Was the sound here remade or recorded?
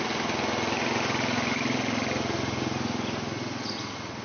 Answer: recorded